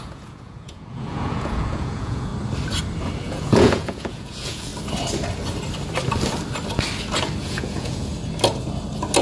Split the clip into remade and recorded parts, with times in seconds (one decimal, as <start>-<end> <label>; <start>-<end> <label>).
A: 0.0-2.3 remade; 2.3-3.2 recorded; 3.2-4.7 remade; 4.7-7.4 recorded; 7.4-8.1 remade; 8.1-9.2 recorded